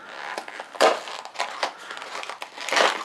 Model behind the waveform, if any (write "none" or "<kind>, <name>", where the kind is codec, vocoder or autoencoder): none